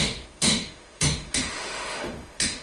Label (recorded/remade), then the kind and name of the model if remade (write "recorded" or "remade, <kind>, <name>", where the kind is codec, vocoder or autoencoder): remade, autoencoder, DAC-VAE